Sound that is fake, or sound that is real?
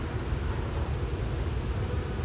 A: real